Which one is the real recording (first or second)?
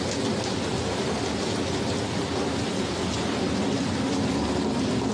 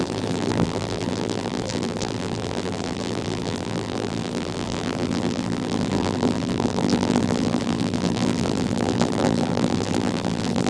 first